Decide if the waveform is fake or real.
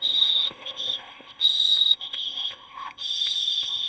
fake